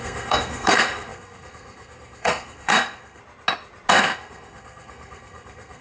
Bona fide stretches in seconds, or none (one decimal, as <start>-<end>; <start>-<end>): 3.2-3.9